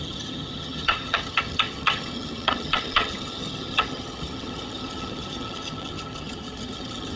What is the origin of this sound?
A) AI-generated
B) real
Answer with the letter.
A